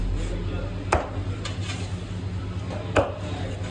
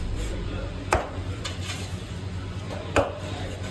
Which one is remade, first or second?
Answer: second